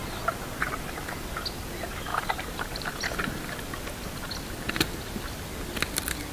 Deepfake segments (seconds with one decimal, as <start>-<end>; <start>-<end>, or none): 2.1-2.9